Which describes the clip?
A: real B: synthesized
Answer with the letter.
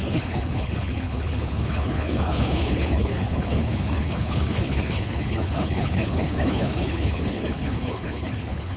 B